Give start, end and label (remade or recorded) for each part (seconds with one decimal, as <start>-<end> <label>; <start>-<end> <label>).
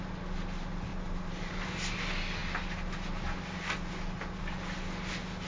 0.0-0.9 recorded; 0.9-1.5 remade; 1.5-5.5 recorded